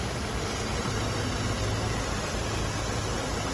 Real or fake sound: real